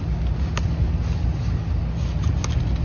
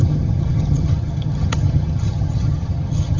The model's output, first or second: second